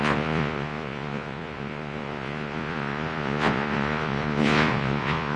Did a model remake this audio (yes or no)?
yes